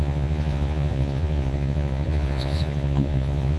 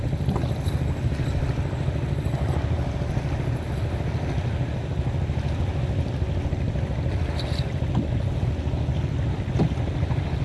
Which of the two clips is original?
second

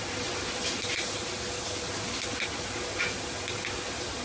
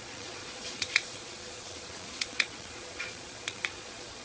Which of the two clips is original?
first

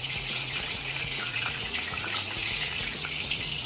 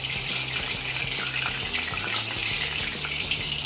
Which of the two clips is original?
second